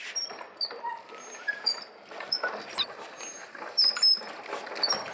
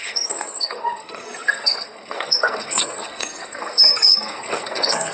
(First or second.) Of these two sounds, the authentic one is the first